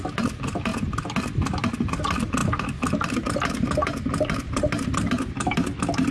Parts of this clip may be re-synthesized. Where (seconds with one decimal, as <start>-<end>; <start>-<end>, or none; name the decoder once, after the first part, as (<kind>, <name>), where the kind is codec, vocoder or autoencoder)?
none